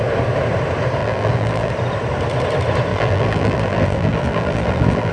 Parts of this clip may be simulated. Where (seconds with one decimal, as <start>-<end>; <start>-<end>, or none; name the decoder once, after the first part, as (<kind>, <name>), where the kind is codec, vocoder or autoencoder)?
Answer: 1.0-1.7 (vocoder, BigVGAN v2); 2.9-5.1